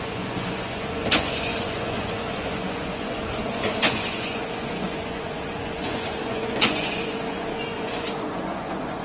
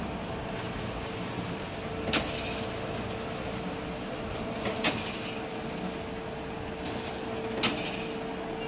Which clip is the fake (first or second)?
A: first